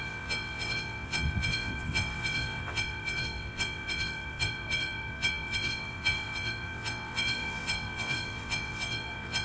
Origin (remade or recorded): remade